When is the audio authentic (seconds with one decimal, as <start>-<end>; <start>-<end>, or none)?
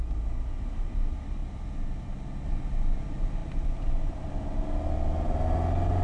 0.0-6.0